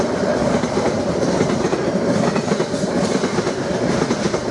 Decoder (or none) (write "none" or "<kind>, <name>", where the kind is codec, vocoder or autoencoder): vocoder, BigVGAN v2